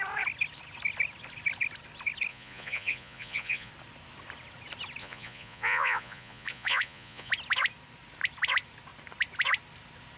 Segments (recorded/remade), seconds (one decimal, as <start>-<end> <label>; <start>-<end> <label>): 0.0-2.3 recorded; 2.3-3.7 remade; 3.7-5.0 recorded; 5.0-7.3 remade; 7.3-10.2 recorded